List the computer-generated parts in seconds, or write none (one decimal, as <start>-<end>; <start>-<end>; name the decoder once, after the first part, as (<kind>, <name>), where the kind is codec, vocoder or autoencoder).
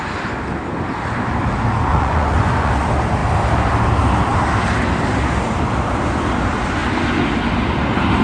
1.9-2.7 (vocoder, Vocos)